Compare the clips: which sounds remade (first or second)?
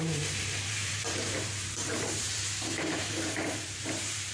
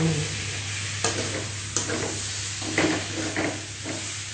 first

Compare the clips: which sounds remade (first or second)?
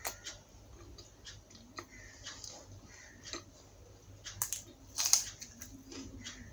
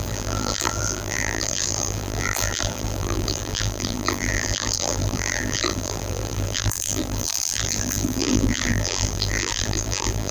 second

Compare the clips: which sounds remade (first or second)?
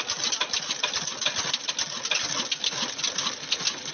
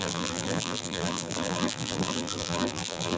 second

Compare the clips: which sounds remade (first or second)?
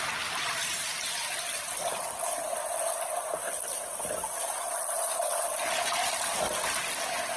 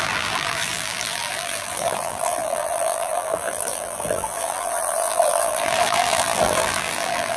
second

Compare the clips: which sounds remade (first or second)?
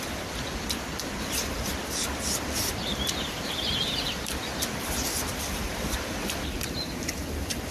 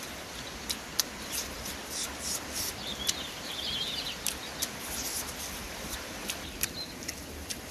first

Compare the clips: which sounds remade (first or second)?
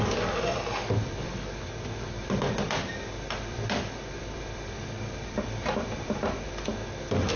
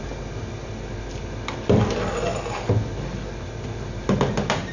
first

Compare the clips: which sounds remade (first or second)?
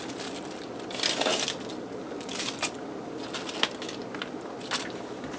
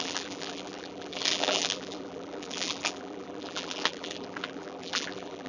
second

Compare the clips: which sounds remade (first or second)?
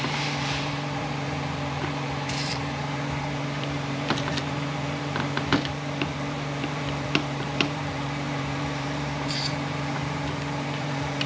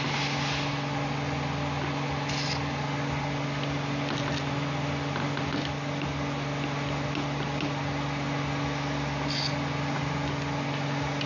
first